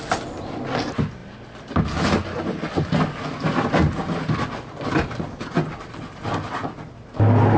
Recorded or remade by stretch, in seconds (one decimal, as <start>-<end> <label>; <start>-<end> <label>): 0.0-7.6 recorded